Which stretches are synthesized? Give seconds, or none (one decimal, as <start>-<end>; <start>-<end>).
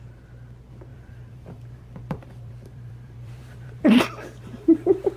0.9-4.0